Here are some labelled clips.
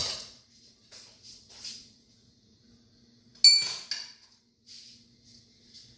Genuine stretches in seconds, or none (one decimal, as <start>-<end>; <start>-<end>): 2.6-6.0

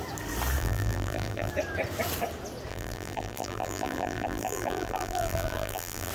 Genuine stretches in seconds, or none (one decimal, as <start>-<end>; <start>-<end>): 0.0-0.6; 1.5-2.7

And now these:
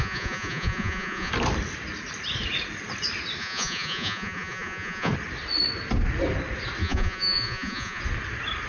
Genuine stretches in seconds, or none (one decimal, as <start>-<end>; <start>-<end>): 1.3-3.4; 5.1-6.8; 8.0-8.7